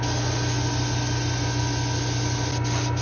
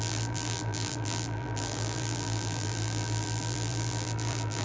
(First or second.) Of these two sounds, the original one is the first